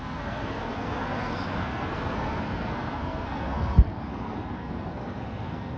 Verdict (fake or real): fake